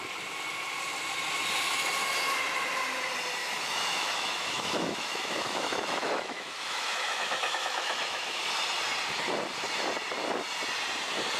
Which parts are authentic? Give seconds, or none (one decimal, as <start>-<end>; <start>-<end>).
0.0-3.4; 8.4-11.4